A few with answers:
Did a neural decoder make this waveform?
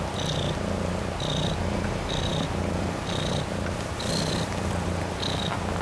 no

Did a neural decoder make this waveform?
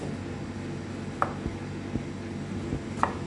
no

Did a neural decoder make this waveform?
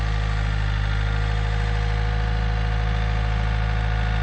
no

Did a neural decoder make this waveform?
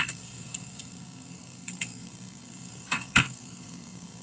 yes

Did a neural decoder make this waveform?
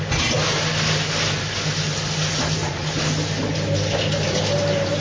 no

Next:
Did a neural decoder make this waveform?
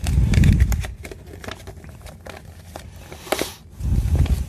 no